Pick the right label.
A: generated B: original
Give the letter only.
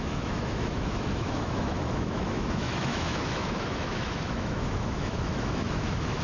A